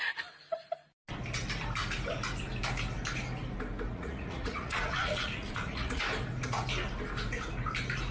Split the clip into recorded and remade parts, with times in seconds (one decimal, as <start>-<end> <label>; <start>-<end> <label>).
0.0-3.9 recorded; 3.9-6.0 remade; 6.0-8.1 recorded